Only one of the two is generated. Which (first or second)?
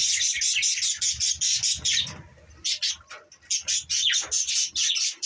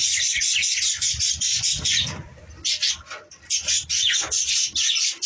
second